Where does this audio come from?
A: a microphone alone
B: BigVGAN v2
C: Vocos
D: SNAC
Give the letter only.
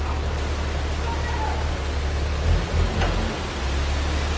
A